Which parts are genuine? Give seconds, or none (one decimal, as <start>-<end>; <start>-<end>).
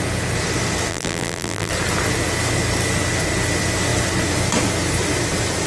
0.0-0.9; 1.7-5.7